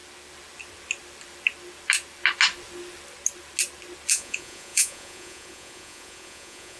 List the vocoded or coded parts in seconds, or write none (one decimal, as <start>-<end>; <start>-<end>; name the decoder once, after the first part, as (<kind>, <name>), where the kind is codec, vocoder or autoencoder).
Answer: 4.1-6.8 (vocoder, Vocos)